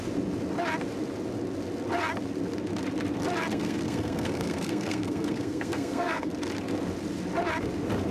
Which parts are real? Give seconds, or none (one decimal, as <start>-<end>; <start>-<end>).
0.0-3.5; 6.3-8.1